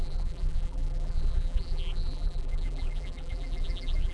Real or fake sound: fake